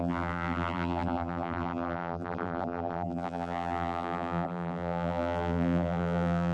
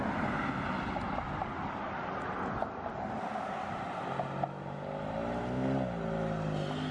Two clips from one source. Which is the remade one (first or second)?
first